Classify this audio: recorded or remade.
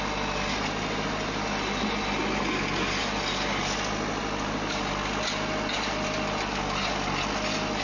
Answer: recorded